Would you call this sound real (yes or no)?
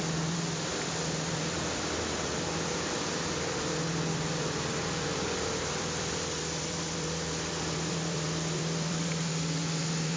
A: no